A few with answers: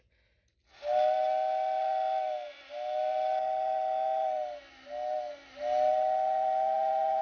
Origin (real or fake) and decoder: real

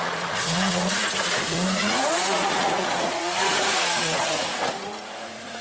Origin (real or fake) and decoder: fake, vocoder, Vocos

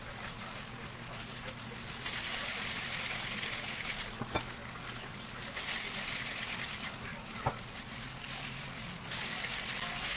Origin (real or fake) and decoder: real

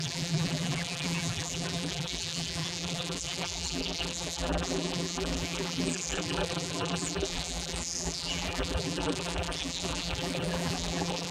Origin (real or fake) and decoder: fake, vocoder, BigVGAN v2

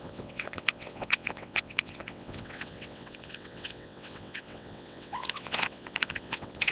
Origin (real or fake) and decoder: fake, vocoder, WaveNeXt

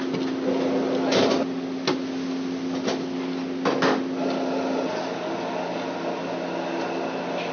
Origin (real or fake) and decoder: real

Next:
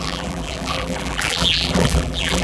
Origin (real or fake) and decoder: fake, vocoder, BigVGAN v2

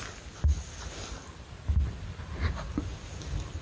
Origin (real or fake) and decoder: real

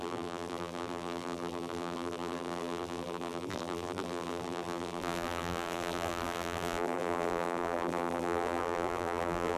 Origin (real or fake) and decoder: fake, vocoder, BigVGAN v2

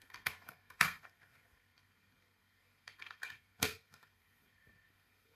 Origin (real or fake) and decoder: fake, codec, SNAC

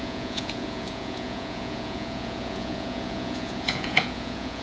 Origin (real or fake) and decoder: fake, vocoder, Vocos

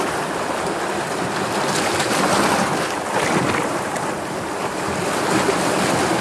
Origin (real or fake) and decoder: real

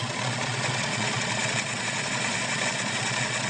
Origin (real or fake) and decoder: fake, vocoder, Vocos